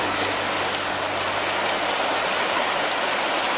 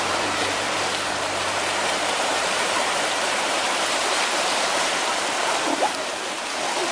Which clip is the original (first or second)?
first